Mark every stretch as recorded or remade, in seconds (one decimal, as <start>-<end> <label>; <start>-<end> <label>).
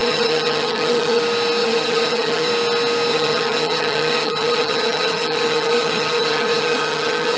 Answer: 0.0-1.2 remade; 1.2-1.6 recorded; 1.6-2.5 remade; 2.5-3.1 recorded; 3.1-7.4 remade